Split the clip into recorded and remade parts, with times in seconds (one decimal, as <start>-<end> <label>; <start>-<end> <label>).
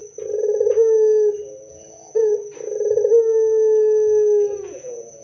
0.0-1.7 recorded; 1.7-2.3 remade; 2.3-4.5 recorded; 4.5-5.2 remade